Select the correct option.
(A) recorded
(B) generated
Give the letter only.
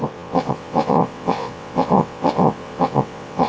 B